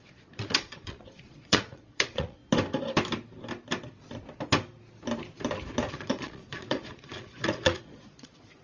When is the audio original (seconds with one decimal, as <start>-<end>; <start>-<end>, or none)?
2.4-5.9